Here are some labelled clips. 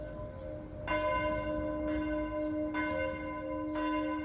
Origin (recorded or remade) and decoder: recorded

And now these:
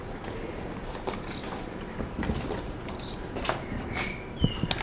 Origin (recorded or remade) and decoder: recorded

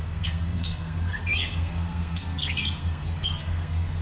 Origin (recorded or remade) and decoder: remade, codec, SNAC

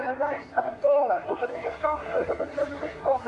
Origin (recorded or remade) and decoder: remade, codec, SNAC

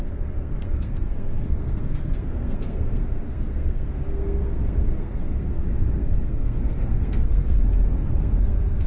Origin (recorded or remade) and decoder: remade, codec, SNAC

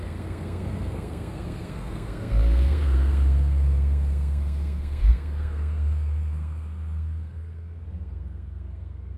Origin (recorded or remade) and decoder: remade, codec, SNAC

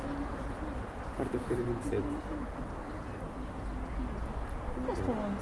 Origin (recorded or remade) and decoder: recorded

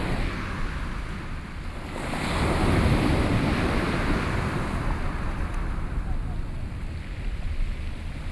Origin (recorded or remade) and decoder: recorded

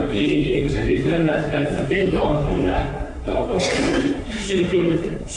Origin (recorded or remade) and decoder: remade, codec, SNAC